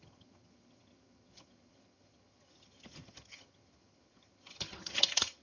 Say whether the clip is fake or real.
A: fake